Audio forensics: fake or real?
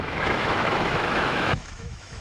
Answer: fake